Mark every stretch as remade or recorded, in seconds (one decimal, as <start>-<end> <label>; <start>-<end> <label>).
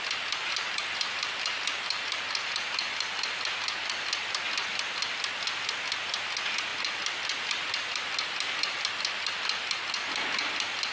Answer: 0.0-0.4 recorded; 0.4-2.5 remade; 2.5-10.9 recorded